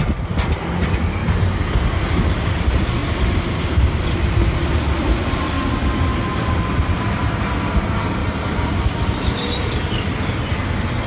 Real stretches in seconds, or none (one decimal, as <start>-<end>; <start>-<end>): 0.0-3.0; 4.0-6.1; 7.3-8.2; 9.4-11.1